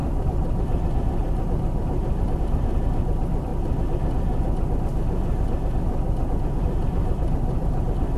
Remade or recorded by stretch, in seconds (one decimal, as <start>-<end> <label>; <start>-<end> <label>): 0.0-3.5 remade; 3.5-6.6 recorded; 6.6-8.2 remade